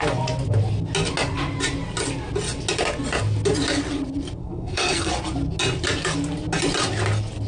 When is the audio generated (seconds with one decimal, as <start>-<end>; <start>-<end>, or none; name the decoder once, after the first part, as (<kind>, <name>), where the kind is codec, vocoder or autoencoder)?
4.4-5.1 (codec, SNAC)